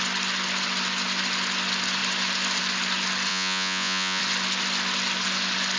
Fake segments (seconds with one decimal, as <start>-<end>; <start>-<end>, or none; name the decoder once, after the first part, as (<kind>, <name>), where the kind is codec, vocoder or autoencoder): 3.3-4.2 (vocoder, Vocos)